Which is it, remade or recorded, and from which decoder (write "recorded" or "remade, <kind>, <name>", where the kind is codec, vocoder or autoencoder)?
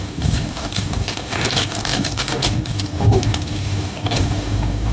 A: remade, codec, DAC